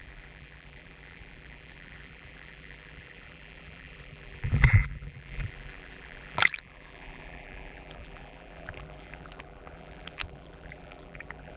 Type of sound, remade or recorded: remade